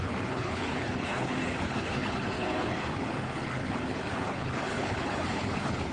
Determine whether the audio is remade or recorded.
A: remade